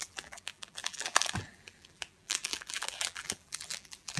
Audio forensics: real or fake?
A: fake